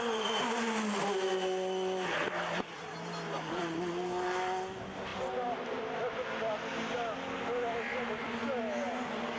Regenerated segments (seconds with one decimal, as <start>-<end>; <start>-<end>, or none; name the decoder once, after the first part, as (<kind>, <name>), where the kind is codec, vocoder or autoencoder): none